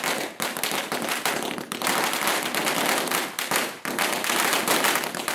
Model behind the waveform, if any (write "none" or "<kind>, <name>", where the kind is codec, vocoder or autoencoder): none